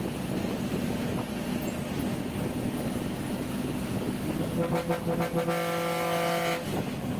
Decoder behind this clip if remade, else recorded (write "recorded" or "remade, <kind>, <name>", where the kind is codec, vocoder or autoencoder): recorded